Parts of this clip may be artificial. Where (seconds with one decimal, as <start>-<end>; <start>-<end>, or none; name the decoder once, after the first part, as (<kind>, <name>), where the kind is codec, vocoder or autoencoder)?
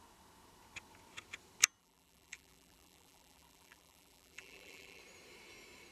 1.8-5.0 (vocoder, BigVGAN v2)